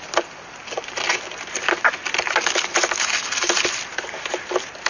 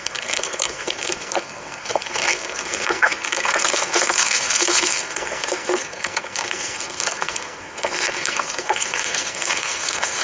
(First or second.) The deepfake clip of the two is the second